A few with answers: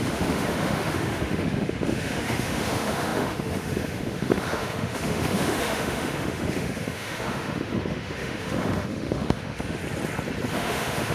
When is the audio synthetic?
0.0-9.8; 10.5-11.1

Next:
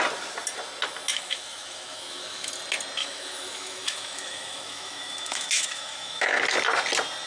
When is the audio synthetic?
1.1-2.5; 3.0-6.4

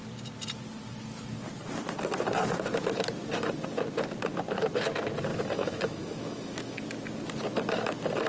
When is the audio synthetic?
5.3-6.8

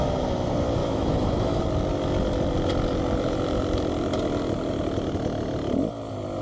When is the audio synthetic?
0.8-1.6

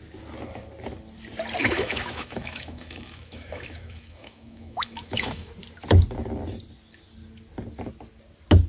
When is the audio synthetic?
1.6-5.5

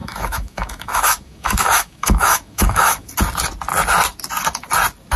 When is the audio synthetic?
0.0-3.1

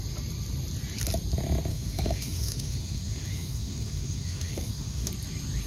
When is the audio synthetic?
1.7-5.1

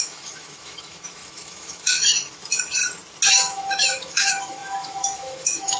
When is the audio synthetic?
0.0-2.8; 3.3-5.8